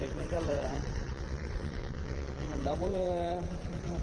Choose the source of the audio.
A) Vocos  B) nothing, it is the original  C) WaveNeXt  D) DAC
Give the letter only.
C